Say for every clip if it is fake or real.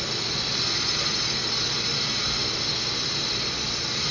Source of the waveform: real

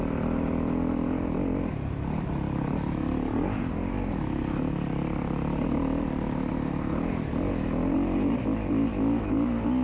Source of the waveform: real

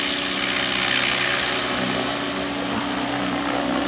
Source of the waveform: real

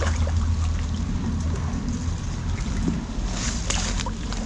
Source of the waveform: real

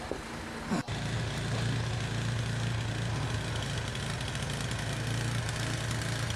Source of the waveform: real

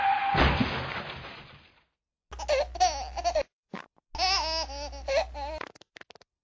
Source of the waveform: real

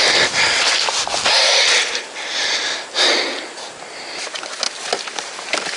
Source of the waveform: real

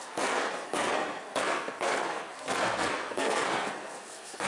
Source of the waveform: fake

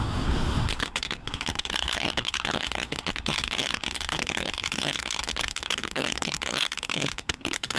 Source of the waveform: fake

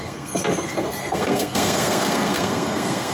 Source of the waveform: fake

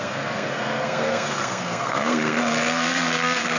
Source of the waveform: fake